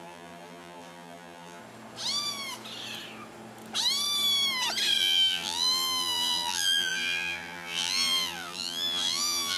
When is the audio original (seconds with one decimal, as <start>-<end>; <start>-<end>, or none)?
1.6-5.0